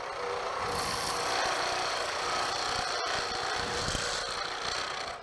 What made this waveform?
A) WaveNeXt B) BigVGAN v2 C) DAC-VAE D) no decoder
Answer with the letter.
D